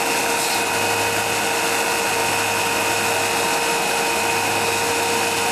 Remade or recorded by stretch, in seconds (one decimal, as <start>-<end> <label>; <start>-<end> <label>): 0.0-5.5 recorded